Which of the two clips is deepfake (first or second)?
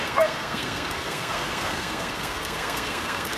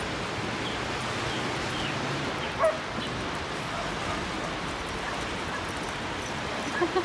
first